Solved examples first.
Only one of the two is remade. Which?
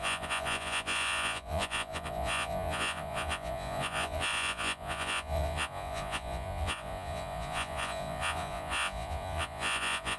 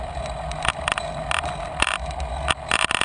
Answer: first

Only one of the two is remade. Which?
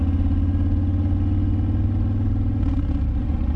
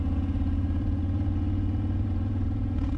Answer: second